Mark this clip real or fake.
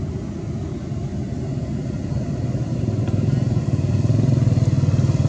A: real